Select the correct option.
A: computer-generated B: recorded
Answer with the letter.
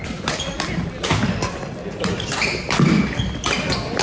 B